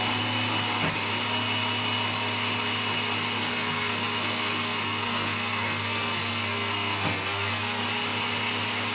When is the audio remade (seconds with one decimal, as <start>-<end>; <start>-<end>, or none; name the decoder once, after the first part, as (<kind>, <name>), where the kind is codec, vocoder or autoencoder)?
3.4-7.8 (codec, SNAC)